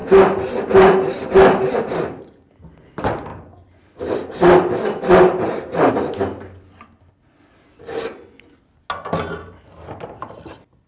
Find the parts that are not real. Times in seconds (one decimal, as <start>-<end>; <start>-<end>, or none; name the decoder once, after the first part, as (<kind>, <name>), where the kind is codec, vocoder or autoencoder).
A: none

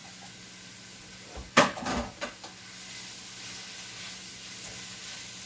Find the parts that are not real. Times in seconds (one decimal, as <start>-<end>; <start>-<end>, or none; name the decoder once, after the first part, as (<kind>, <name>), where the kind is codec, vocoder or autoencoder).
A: 1.5-1.9 (codec, HILCodec)